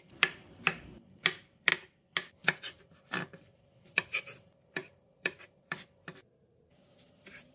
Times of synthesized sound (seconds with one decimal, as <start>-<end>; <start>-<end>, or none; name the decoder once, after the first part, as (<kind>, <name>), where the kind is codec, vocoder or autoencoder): 0.0-1.7 (vocoder, BigVGAN v2); 2.3-7.5